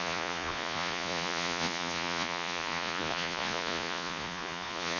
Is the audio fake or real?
fake